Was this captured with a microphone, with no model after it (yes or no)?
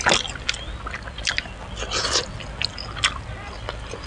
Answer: yes